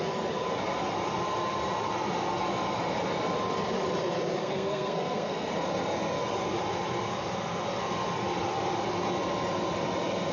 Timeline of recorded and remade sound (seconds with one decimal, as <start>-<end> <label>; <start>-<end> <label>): 0.0-4.4 recorded; 4.4-5.5 remade; 5.5-10.3 recorded